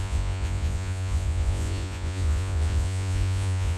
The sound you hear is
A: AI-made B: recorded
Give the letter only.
A